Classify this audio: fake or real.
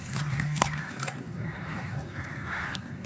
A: fake